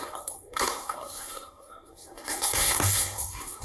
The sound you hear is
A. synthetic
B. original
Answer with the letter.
A